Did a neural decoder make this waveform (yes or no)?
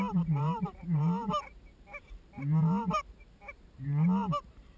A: yes